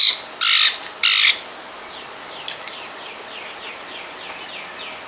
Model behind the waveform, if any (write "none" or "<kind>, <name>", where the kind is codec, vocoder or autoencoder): none